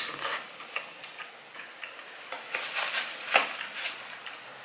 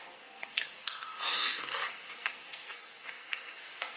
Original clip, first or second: first